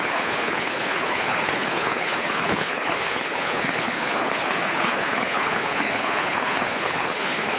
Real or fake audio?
fake